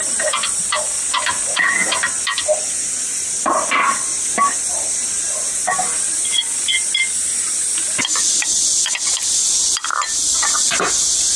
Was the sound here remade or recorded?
recorded